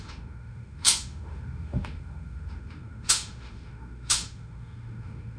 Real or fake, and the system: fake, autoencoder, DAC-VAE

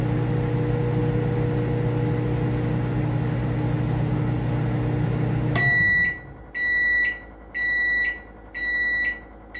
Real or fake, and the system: real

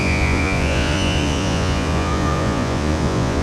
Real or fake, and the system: fake, vocoder, Vocos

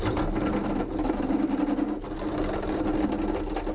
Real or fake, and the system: real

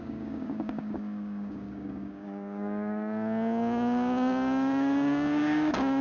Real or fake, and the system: fake, codec, DAC